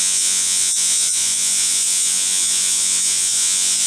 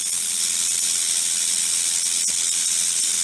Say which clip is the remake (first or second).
first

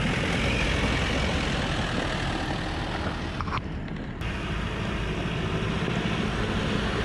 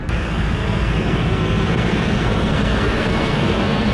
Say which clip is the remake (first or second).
second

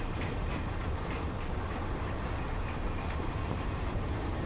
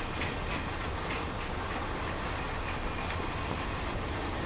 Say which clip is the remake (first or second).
first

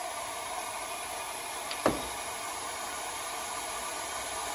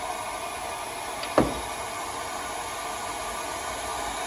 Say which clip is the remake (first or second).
first